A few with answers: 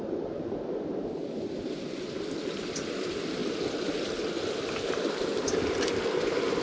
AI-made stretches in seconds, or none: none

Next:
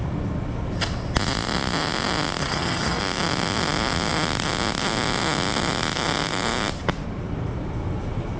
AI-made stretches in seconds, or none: 2.4-3.0 (vocoder, HiFi-GAN)

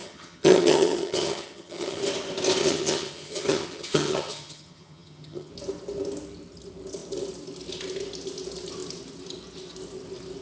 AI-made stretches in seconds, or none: 0.0-2.0 (vocoder, HiFi-GAN); 2.6-5.5

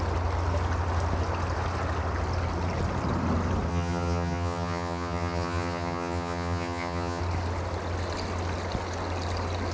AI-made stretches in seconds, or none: 3.7-7.2 (vocoder, HiFi-GAN)

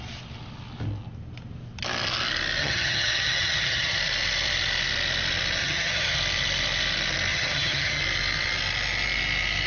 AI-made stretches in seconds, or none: 2.6-4.0 (vocoder, HiFi-GAN); 5.6-6.2; 7.3-8.0